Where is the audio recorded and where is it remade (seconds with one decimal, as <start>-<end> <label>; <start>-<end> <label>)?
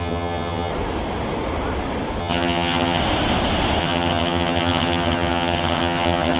0.0-0.7 remade; 0.7-2.2 recorded; 2.2-3.0 remade; 3.0-3.8 recorded; 3.8-6.4 remade